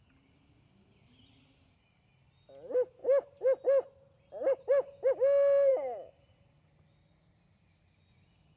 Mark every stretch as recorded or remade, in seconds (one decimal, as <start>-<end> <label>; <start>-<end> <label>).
0.0-8.6 recorded